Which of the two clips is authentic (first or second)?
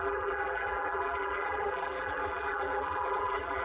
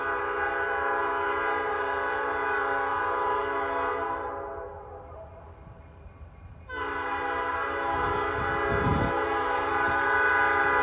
second